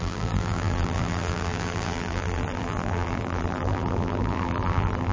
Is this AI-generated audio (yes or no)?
yes